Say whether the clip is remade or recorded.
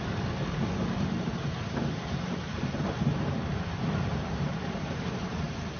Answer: remade